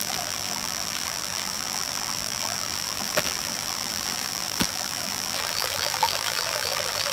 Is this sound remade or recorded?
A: remade